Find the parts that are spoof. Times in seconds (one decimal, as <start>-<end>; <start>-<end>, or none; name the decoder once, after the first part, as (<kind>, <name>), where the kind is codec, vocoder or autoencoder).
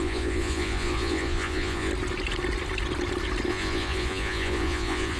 0.0-1.9 (vocoder, Vocos); 3.5-5.2